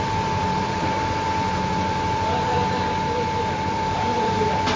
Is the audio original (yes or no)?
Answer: no